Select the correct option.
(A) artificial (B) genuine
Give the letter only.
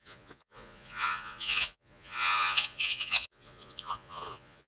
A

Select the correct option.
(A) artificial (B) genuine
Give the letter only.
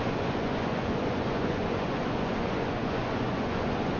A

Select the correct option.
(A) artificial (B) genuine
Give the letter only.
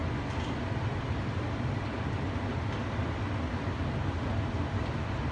B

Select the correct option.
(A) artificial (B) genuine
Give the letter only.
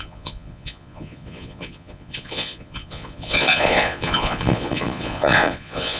A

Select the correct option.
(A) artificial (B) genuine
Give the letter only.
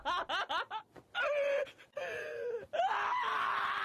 B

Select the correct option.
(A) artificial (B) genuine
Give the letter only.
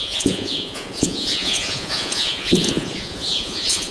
A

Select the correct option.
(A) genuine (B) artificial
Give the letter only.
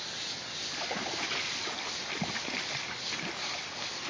A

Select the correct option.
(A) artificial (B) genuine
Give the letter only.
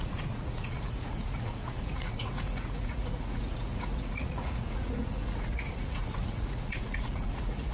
A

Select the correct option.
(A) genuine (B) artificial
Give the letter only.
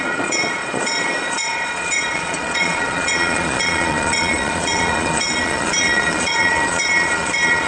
B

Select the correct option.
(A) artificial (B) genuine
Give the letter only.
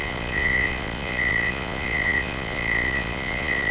A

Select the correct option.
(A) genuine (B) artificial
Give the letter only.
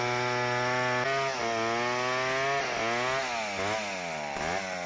A